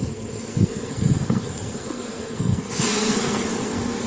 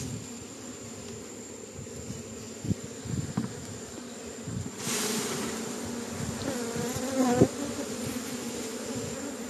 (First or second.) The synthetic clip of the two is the first